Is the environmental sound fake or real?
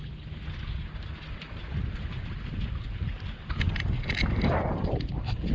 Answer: real